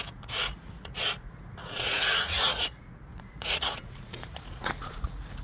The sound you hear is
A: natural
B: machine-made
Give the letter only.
B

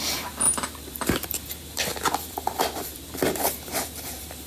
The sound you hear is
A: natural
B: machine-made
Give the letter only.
B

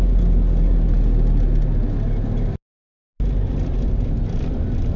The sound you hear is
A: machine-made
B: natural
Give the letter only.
B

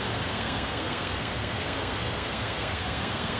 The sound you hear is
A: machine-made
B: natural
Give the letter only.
A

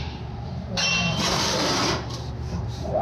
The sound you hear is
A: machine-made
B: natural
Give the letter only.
A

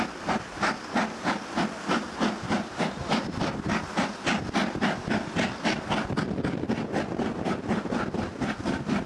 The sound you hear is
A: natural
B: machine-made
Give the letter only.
A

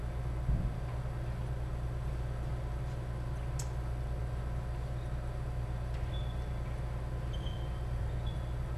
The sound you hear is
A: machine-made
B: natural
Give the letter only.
B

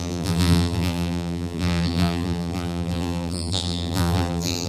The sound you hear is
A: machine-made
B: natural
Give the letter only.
A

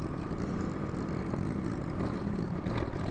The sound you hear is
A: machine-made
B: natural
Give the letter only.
B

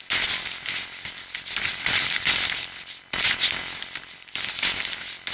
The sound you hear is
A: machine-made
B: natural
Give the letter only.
B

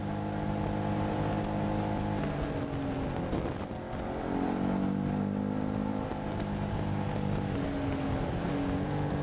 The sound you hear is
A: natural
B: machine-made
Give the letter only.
A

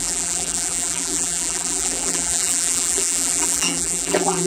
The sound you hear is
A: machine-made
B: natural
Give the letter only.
A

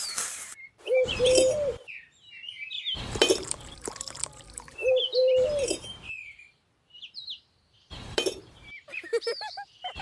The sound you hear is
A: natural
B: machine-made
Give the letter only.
B